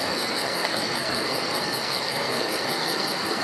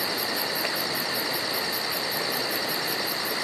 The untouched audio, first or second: second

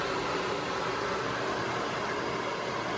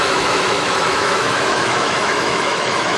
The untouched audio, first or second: first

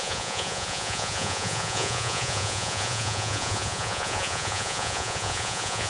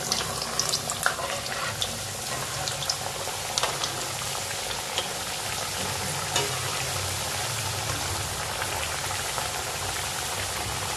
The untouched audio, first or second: second